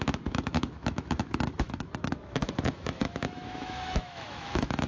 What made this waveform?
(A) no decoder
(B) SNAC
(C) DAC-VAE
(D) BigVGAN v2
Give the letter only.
C